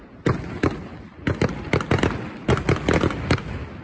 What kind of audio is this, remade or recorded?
recorded